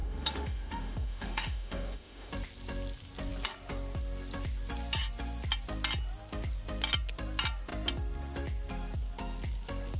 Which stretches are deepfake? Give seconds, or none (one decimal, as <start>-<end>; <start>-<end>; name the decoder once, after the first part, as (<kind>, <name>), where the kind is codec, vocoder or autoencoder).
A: 0.0-2.3 (autoencoder, DAC-VAE)